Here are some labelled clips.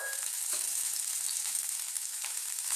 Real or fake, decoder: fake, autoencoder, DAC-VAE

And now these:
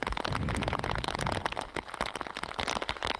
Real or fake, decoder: real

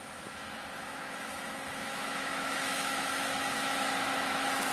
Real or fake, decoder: fake, autoencoder, DAC-VAE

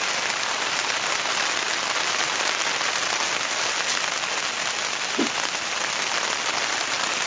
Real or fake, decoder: real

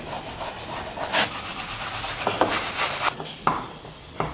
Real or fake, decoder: real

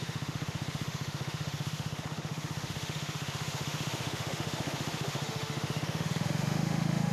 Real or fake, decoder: fake, autoencoder, DAC-VAE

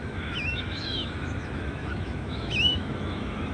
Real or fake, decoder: fake, autoencoder, DAC-VAE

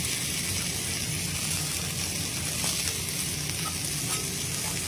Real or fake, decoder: real